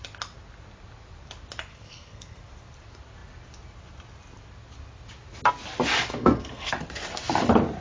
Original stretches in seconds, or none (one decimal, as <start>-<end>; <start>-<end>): 0.0-1.7; 2.4-6.1; 6.7-7.8